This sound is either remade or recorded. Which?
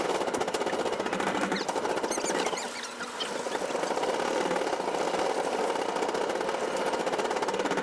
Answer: recorded